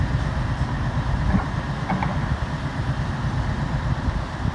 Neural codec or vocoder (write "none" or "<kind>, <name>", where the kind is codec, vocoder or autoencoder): none